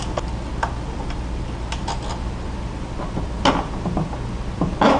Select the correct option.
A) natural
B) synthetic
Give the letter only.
A